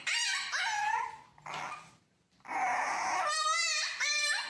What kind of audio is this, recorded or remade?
recorded